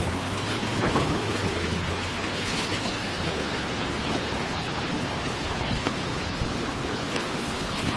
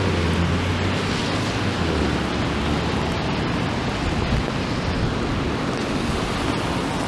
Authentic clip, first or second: second